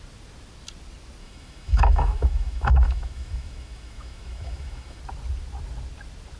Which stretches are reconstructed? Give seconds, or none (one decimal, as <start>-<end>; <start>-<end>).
1.2-5.0